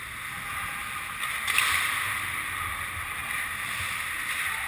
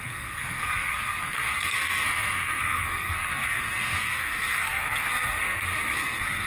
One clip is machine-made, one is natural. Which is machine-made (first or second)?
second